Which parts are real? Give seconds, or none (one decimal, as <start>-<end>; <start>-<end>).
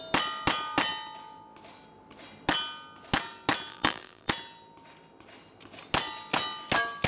0.0-3.7; 4.3-7.1